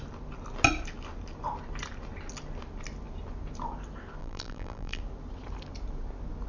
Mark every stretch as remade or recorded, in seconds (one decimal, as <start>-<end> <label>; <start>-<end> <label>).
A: 0.0-4.2 recorded; 4.2-5.0 remade; 5.0-6.5 recorded